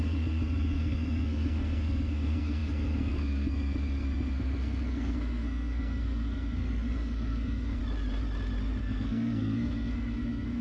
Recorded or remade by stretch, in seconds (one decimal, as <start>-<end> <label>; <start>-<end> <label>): 0.0-7.8 remade; 7.8-8.8 recorded; 8.8-10.6 remade